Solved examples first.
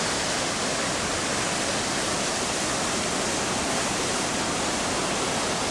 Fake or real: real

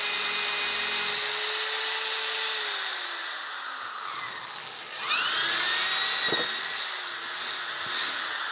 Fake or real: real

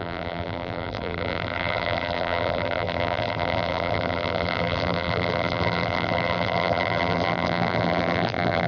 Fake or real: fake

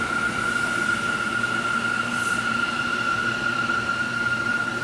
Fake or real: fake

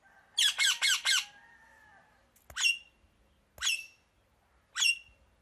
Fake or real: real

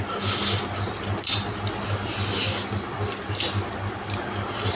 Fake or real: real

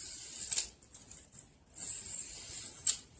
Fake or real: real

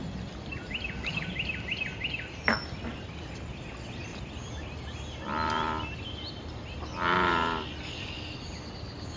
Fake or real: real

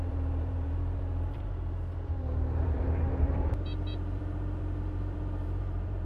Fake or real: fake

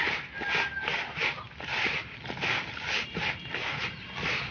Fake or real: real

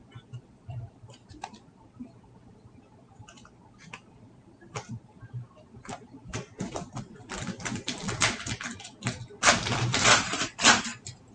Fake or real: fake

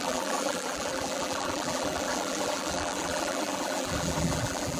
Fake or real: fake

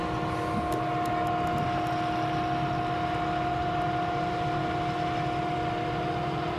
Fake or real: real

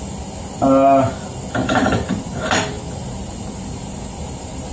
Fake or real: real